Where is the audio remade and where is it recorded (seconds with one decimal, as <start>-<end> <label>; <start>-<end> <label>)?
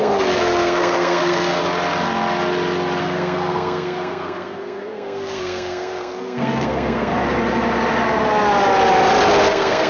0.0-1.6 remade; 1.6-3.0 recorded; 3.0-7.1 remade; 7.1-9.5 recorded; 9.5-9.9 remade